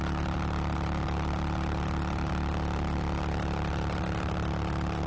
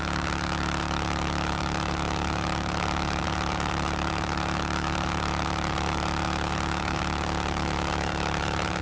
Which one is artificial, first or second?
second